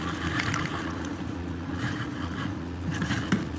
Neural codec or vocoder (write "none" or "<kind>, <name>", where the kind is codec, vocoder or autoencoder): vocoder, Vocos